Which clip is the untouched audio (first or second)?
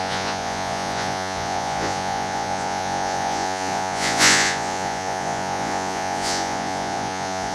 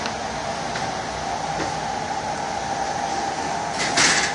second